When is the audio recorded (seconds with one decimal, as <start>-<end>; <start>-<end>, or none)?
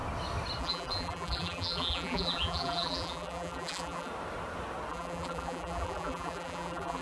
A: 0.0-0.6; 4.1-4.9